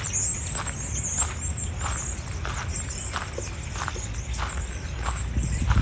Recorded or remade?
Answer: recorded